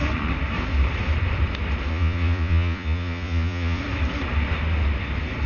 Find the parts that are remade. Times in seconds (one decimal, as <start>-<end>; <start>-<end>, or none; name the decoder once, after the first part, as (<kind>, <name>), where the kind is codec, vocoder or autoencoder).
1.9-3.8 (vocoder, Vocos)